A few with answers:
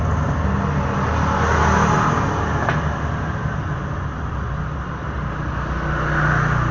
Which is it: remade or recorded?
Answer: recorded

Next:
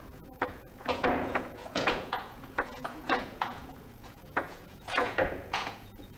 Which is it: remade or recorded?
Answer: remade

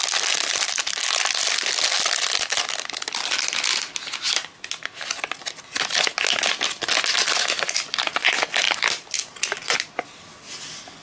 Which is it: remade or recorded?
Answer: recorded